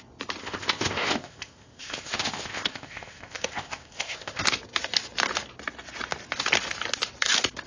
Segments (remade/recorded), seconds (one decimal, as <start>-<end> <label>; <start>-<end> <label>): 0.0-0.4 recorded; 0.4-4.4 remade; 4.4-7.7 recorded